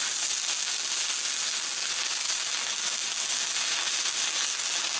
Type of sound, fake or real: real